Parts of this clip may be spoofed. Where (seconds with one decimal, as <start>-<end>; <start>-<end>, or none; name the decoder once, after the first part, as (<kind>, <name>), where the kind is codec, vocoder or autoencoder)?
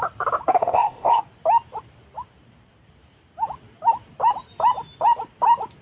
0.6-1.2 (codec, ZipCodec)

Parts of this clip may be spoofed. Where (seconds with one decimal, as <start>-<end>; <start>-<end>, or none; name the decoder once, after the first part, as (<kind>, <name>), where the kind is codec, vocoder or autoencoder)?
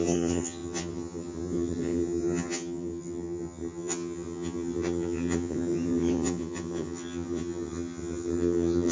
0.0-8.9 (vocoder, HiFi-GAN)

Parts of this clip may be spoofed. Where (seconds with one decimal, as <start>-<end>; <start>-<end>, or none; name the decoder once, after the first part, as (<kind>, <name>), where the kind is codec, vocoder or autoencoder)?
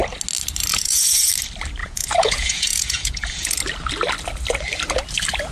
0.7-1.3 (vocoder, Vocos); 1.8-3.6